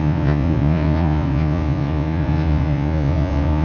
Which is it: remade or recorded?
remade